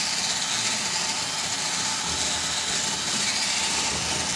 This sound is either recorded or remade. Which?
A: recorded